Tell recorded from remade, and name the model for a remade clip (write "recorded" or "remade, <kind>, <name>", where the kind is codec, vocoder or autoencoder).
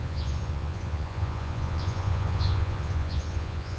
remade, vocoder, Vocos